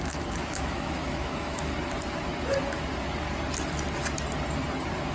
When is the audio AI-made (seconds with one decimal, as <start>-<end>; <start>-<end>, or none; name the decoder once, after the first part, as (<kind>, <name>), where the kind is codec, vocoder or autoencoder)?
0.0-1.7 (autoencoder, DAC-VAE)